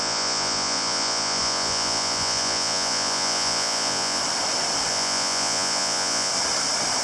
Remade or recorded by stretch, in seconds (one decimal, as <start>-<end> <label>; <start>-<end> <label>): 0.0-4.2 remade; 4.2-4.9 recorded; 4.9-6.3 remade; 6.3-7.0 recorded